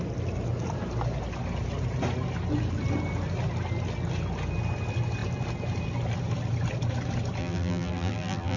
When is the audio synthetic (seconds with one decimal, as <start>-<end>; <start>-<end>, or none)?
7.4-8.6